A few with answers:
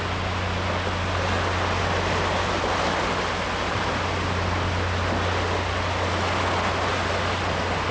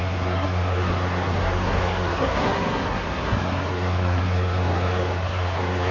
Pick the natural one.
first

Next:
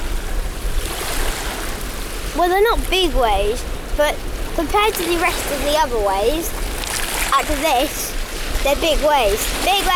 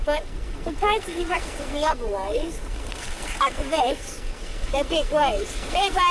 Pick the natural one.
first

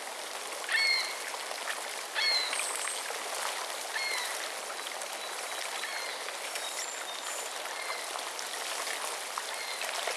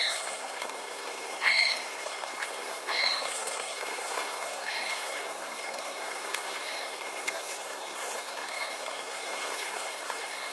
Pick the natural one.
first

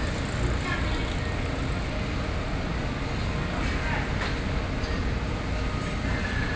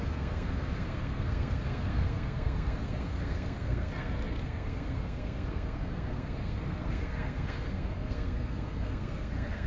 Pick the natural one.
first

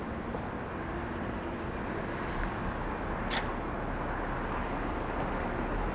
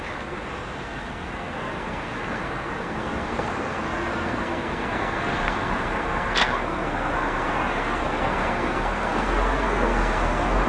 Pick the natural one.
first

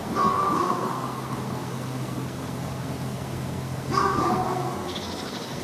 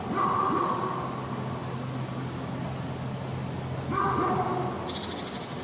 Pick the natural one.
second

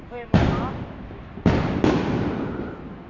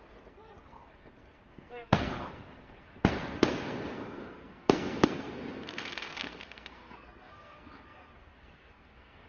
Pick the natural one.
first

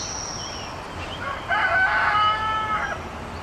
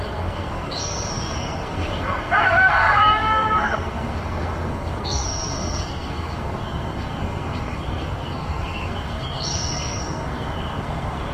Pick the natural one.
first